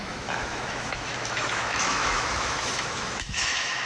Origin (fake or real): fake